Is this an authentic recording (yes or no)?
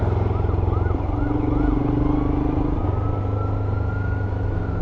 yes